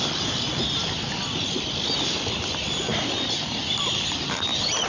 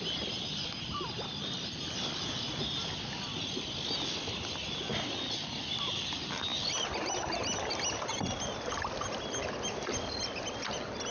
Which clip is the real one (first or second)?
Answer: second